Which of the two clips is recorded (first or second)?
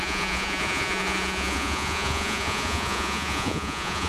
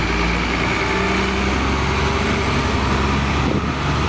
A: second